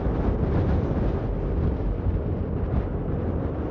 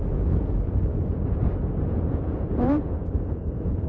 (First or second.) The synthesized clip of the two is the second